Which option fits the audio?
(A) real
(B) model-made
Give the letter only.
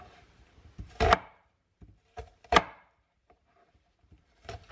B